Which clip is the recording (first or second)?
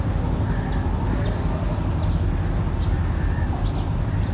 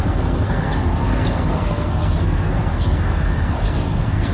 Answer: first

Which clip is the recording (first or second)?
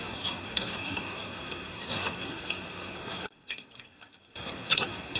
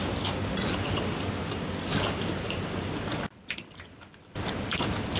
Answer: second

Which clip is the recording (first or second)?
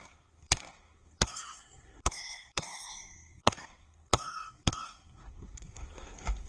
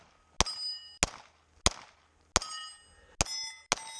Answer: second